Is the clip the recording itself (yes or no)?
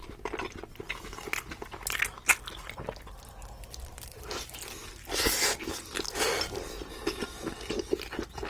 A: yes